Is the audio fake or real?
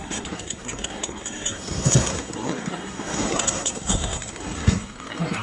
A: fake